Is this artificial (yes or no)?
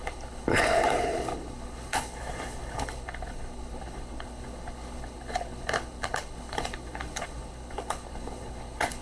yes